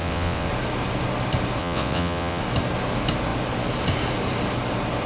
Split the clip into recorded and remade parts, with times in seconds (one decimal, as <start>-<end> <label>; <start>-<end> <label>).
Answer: 0.0-0.5 remade; 0.5-1.6 recorded; 1.6-2.4 remade; 2.4-5.1 recorded